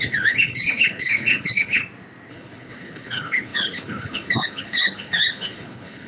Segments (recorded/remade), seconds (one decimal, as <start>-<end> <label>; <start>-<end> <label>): 0.0-1.8 remade; 1.8-2.3 recorded; 2.3-6.1 remade